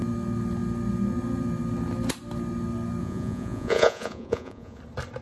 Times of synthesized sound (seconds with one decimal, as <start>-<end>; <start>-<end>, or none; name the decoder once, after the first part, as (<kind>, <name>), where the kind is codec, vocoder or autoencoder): 3.0-4.8 (vocoder, Vocos)